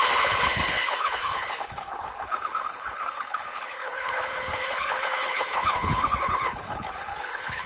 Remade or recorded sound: remade